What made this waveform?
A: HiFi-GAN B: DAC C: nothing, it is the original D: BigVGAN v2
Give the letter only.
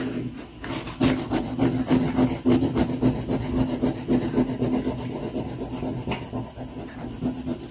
C